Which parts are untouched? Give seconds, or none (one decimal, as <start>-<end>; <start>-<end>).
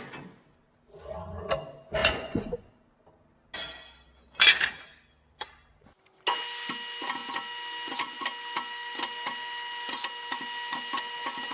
0.0-2.0; 2.7-11.5